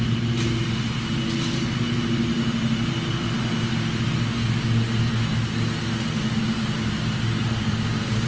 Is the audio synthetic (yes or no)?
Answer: no